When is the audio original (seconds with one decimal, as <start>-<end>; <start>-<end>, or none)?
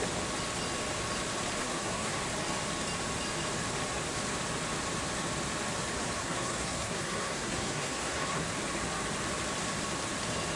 0.0-1.6; 2.2-6.2; 8.5-10.6